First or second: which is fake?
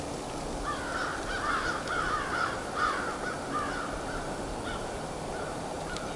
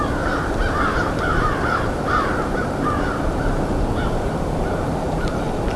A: second